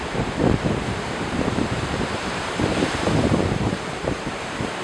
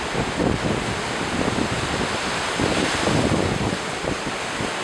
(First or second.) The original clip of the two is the second